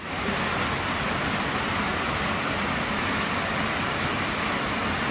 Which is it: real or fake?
real